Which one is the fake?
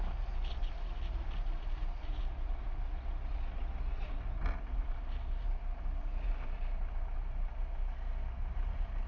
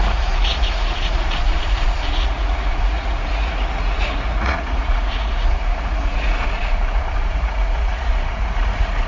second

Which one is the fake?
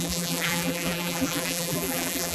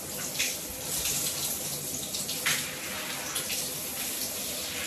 first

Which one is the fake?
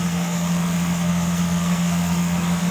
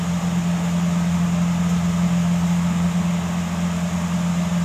first